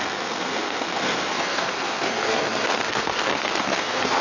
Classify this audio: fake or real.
fake